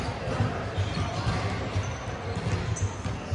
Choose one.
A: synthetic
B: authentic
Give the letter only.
B